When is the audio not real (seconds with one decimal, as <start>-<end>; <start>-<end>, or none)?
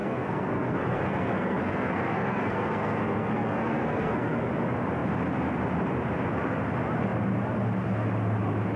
0.0-4.5